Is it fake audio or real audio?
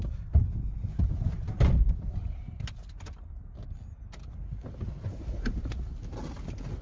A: real